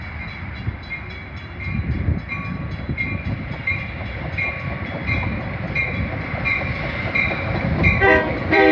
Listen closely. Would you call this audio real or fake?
fake